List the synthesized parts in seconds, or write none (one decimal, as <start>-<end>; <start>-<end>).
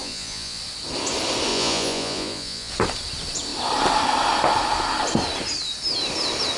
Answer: 0.0-0.6; 1.5-2.7